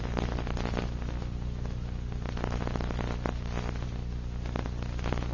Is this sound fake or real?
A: real